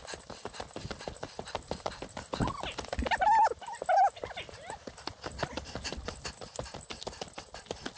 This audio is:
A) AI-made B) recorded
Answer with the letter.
B